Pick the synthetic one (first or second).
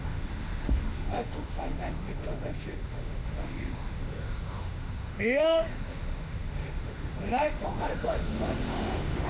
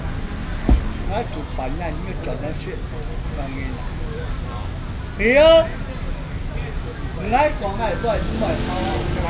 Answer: first